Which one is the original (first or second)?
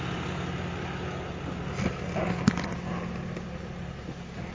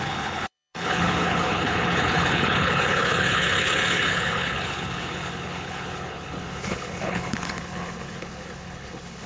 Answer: first